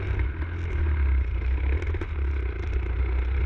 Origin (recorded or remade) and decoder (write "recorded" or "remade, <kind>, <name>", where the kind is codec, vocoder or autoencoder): recorded